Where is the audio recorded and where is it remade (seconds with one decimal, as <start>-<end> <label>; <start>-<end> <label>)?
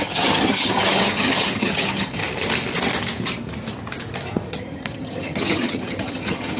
0.0-2.2 remade; 2.2-4.5 recorded; 4.5-6.6 remade